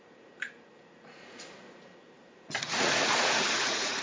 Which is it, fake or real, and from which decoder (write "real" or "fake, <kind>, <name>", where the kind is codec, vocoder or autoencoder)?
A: fake, vocoder, Vocos